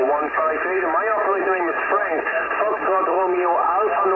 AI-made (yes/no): no